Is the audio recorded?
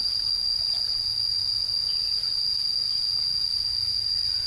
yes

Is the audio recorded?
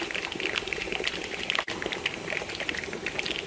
yes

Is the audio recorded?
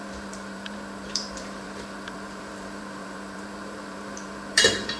no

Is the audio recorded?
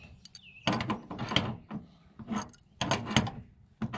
yes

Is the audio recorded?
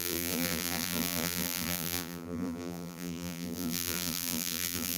no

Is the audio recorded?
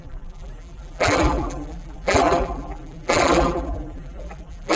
no